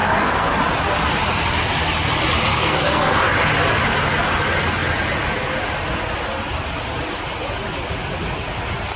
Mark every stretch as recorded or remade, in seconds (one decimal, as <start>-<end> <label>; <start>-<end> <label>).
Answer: 0.0-0.6 remade; 0.6-2.5 recorded; 2.5-3.2 remade; 3.2-9.0 recorded